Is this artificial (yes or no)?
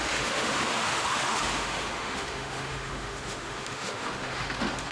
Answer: yes